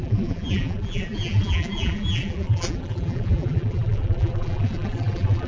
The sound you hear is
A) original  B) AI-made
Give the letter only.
B